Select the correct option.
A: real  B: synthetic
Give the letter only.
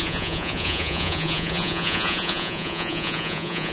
B